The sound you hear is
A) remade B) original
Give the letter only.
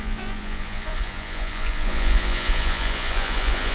A